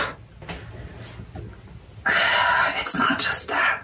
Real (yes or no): yes